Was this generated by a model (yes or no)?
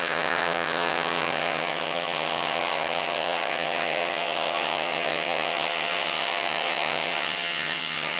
yes